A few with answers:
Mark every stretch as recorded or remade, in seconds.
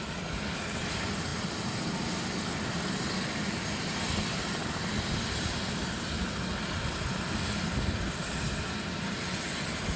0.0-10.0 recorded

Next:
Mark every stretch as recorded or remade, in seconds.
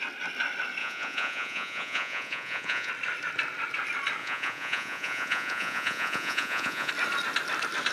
0.0-0.8 recorded; 0.8-2.9 remade; 2.9-4.2 recorded; 4.2-6.9 remade; 6.9-7.9 recorded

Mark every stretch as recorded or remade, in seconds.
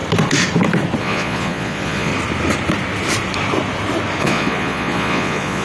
0.0-1.0 recorded; 1.0-2.1 remade; 2.1-4.2 recorded; 4.2-5.6 remade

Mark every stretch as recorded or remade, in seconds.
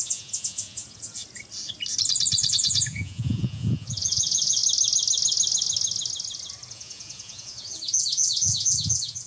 0.0-1.2 remade; 1.2-2.5 recorded; 2.5-4.6 remade; 4.6-6.7 recorded; 6.7-9.3 remade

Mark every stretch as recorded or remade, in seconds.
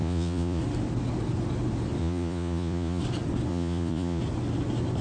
0.0-0.6 remade; 0.6-2.0 recorded; 2.0-3.0 remade; 3.0-3.5 recorded; 3.5-4.2 remade; 4.2-5.0 recorded